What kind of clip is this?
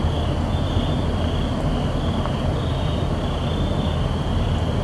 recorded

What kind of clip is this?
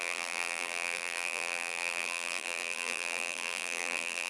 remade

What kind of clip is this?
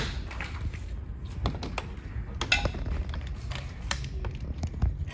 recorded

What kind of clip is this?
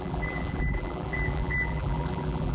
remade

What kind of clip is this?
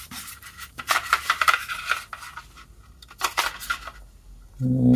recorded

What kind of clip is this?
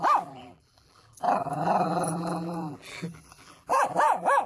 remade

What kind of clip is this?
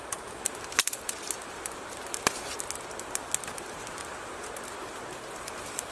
recorded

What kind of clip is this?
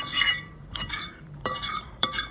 remade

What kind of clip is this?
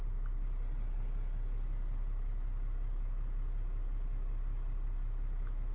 recorded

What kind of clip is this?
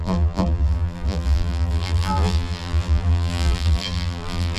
remade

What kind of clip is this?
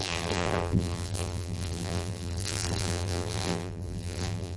remade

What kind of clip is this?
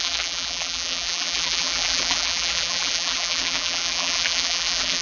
remade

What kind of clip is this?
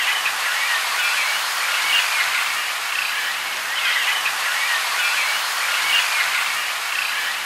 recorded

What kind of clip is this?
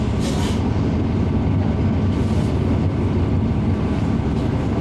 recorded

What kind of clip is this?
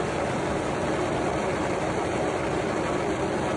recorded